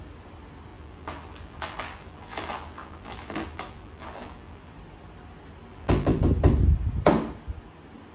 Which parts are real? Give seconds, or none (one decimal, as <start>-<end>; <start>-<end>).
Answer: 0.0-0.7; 4.7-5.7; 6.2-8.1